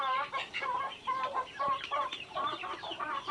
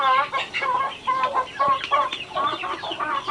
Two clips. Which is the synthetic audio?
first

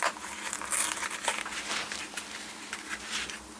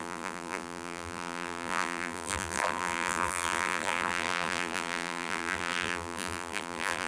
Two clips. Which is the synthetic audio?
second